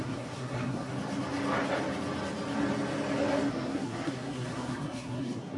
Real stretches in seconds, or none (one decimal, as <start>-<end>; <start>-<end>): 0.9-3.5